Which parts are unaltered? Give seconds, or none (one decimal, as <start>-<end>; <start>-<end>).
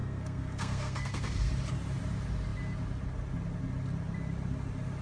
1.5-5.0